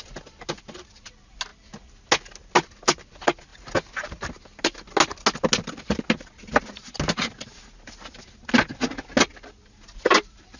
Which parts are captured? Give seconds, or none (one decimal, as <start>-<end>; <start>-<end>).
0.0-10.6